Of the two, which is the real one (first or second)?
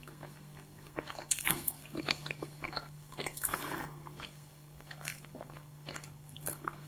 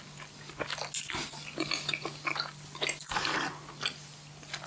second